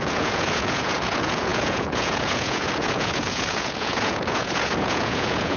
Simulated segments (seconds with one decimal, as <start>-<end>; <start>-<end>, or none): 0.0-5.6